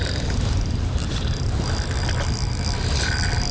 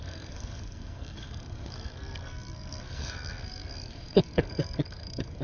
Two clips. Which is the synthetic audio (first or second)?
second